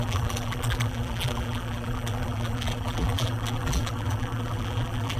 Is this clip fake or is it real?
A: fake